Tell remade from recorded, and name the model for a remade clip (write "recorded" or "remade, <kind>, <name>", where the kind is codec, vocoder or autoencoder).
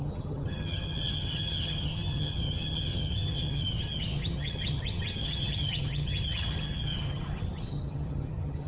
remade, vocoder, HiFi-GAN